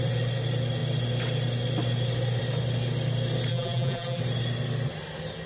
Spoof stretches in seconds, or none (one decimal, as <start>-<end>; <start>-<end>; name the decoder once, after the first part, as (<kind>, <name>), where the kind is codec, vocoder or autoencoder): 3.5-4.2 (vocoder, BigVGAN v2)